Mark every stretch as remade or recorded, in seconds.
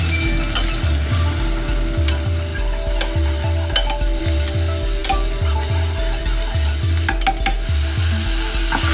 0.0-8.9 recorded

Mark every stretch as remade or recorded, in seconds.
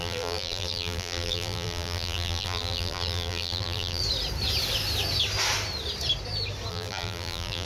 0.0-4.0 remade; 4.0-6.7 recorded; 6.7-7.7 remade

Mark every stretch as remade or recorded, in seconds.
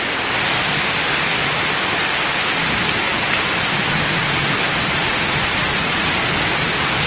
0.0-5.0 recorded; 5.0-6.2 remade; 6.2-7.1 recorded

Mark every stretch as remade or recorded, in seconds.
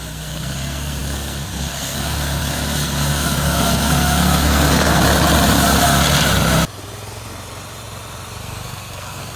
0.0-5.0 remade; 5.0-8.4 recorded; 8.4-9.4 remade